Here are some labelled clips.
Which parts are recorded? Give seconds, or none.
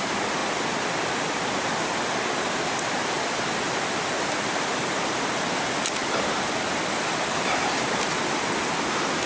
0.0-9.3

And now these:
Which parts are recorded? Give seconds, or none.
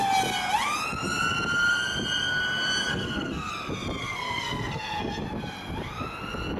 0.0-2.9; 3.5-4.0; 5.2-6.6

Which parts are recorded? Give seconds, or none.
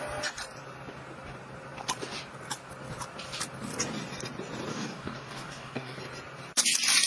0.0-4.7; 6.0-7.1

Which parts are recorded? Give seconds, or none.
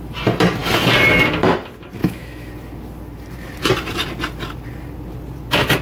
0.0-2.0; 2.5-5.8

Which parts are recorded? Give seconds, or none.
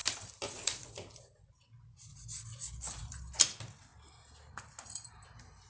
1.5-2.1; 3.4-5.7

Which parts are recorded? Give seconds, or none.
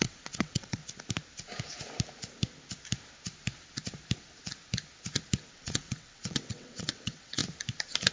0.8-5.5; 7.4-8.1